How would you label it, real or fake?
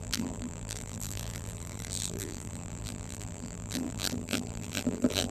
fake